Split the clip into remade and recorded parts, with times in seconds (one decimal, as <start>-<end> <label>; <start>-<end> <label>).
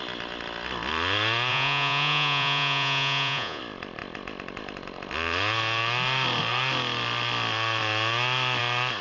0.0-1.5 recorded; 1.5-3.6 remade; 3.6-9.0 recorded